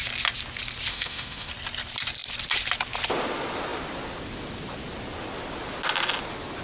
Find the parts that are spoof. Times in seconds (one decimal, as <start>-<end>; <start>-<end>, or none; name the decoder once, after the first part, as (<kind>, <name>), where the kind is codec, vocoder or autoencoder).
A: 0.9-1.5 (autoencoder, DAC-VAE)